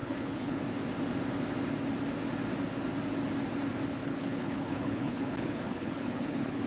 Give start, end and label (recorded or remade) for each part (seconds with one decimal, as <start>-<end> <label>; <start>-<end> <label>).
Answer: 0.0-0.6 remade; 0.6-4.0 recorded; 4.0-6.7 remade